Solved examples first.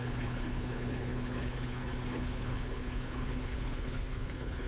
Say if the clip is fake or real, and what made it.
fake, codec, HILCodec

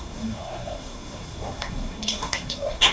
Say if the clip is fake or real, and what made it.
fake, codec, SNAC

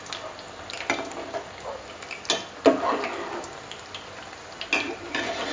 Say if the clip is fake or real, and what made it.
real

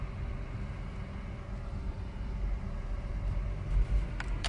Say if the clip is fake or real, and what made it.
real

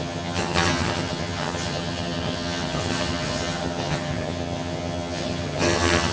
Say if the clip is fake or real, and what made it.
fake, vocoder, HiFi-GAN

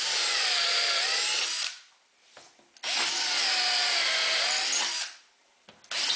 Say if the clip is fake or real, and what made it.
real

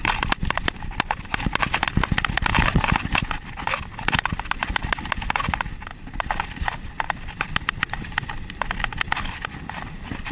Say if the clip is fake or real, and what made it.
real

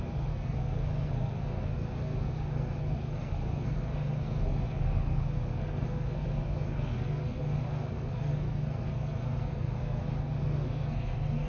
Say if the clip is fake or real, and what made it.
fake, codec, SNAC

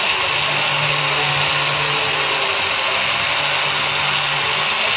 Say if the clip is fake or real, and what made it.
real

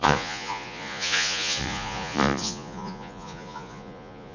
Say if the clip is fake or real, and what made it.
fake, vocoder, Vocos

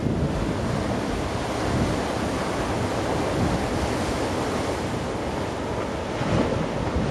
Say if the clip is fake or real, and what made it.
real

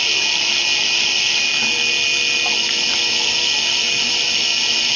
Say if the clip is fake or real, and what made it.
real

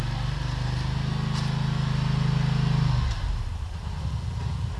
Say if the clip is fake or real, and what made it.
real